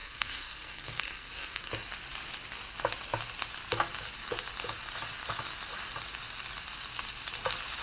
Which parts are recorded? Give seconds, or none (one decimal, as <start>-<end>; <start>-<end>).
1.7-7.8